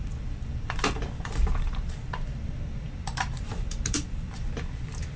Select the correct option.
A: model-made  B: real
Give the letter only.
A